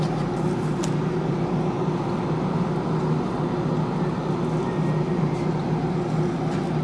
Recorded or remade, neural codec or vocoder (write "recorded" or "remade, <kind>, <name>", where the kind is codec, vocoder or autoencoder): recorded